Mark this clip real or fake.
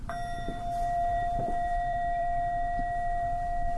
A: fake